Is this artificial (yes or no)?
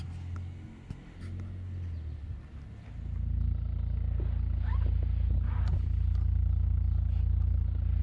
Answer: no